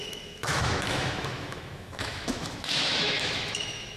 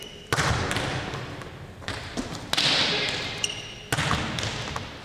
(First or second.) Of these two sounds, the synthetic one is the first